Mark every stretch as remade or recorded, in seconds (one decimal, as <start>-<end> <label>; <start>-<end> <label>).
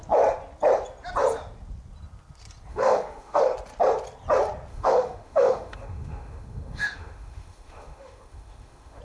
0.0-2.7 recorded; 2.7-3.4 remade; 3.4-4.7 recorded; 4.7-9.0 remade